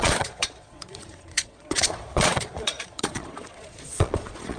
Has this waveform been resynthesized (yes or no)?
yes